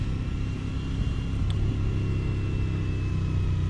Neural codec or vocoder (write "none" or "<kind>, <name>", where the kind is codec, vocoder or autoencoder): none